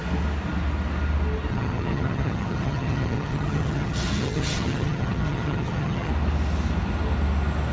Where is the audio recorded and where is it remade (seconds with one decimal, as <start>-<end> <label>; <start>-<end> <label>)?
0.0-1.5 recorded; 1.5-6.1 remade; 6.1-7.7 recorded